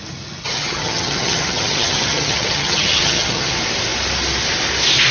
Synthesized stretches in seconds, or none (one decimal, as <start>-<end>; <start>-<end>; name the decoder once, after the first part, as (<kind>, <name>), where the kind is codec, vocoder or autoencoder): 0.4-3.5 (vocoder, HiFi-GAN)